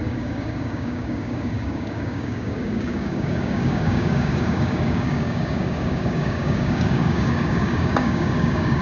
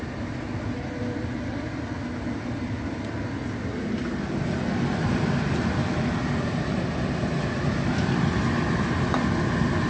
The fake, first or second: first